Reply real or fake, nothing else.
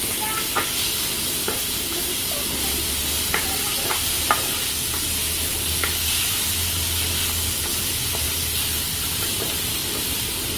real